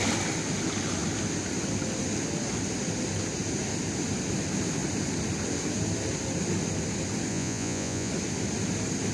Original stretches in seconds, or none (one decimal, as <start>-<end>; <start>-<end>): 0.0-7.3; 8.1-9.1